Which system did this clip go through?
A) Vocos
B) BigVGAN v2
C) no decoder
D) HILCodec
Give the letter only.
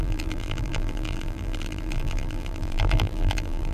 B